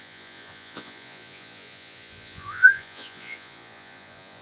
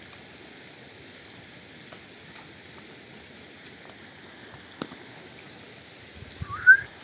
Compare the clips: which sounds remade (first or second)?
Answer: first